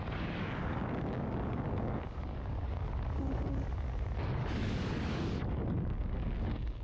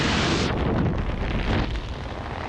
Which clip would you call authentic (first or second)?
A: second